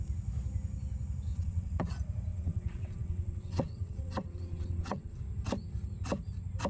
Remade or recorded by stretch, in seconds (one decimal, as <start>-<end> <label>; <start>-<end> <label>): 0.0-1.3 recorded; 1.3-1.9 remade; 1.9-2.3 recorded; 2.3-5.2 remade; 5.2-6.7 recorded